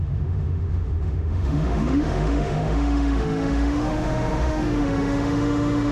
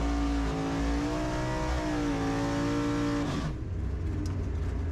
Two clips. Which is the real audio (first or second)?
second